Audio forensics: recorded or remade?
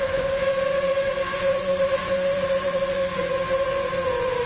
remade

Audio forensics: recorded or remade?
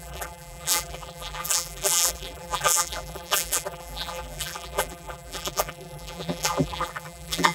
remade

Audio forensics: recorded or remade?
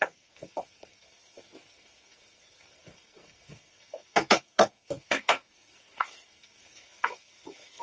remade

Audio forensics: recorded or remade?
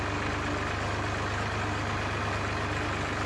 recorded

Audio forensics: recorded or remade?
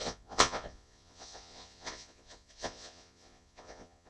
remade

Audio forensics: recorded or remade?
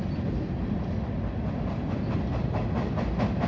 recorded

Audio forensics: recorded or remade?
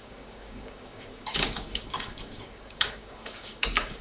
remade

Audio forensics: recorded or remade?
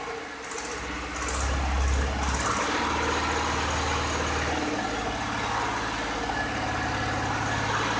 recorded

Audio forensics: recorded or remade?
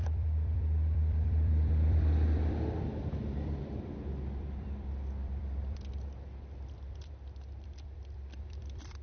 remade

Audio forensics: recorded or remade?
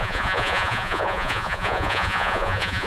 remade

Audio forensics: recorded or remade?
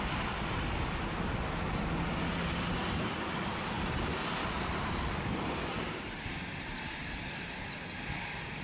recorded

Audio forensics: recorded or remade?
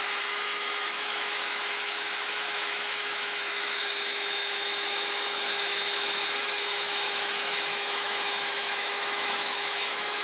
remade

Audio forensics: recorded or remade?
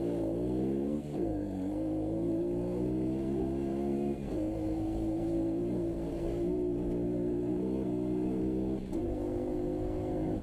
remade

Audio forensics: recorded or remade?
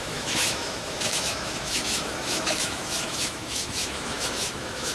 remade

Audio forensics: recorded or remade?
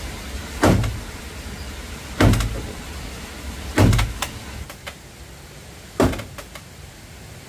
recorded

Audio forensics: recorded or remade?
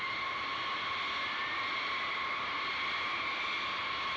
recorded